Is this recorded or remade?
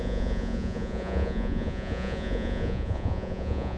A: remade